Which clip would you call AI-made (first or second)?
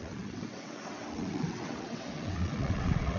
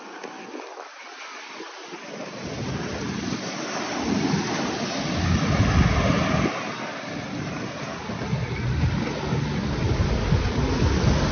first